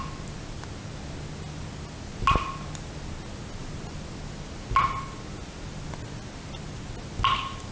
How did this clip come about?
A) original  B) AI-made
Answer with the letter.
A